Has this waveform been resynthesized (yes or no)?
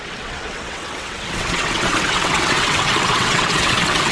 yes